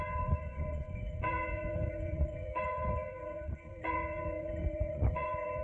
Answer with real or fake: fake